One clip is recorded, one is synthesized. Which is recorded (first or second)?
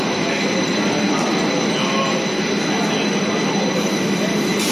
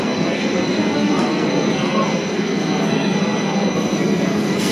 first